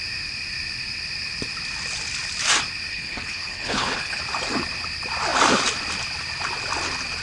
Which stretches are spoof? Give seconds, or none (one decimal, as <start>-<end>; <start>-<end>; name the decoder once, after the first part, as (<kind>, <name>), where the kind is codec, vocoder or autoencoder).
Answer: 2.9-4.2 (codec, HILCodec)